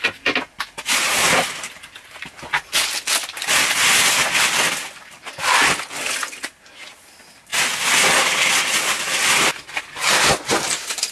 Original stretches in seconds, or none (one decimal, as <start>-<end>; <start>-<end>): 0.0-11.1